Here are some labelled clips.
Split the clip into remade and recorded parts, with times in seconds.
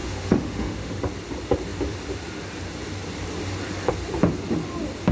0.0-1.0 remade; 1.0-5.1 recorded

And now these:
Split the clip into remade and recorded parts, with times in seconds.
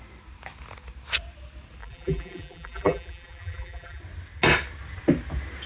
0.0-1.8 recorded; 1.8-4.0 remade; 4.0-5.7 recorded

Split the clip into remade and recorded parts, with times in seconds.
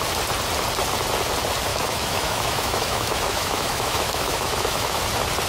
0.0-1.7 recorded; 1.7-5.0 remade; 5.0-5.5 recorded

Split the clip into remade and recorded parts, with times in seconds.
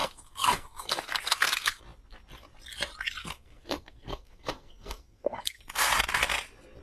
0.0-1.8 remade; 1.8-3.2 recorded; 3.2-5.6 remade; 5.6-6.8 recorded